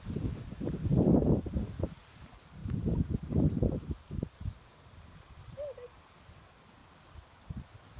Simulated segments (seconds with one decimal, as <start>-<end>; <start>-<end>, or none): 2.6-4.9